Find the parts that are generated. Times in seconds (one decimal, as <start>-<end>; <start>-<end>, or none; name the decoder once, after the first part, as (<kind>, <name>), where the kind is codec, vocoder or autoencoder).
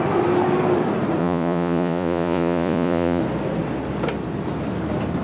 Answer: 1.2-3.2 (vocoder, Vocos)